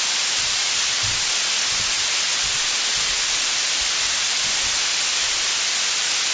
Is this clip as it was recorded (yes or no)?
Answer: yes